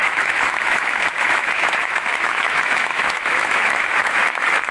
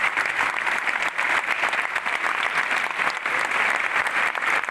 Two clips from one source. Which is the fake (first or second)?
first